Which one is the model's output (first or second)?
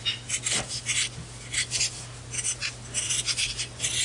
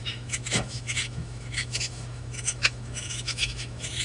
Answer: second